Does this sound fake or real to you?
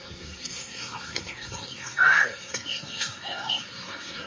fake